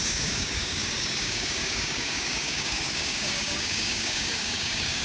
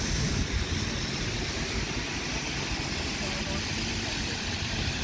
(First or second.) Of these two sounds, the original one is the second